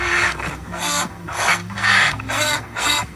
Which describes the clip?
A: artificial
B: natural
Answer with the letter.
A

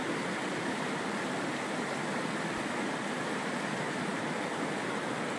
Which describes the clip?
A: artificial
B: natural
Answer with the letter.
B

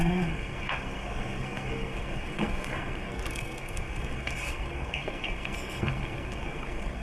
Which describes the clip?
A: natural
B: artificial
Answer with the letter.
B